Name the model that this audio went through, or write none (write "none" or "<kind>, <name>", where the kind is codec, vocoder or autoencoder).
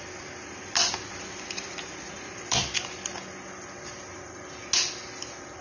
none